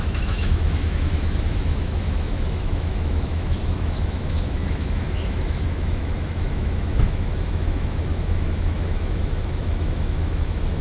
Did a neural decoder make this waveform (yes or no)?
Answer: yes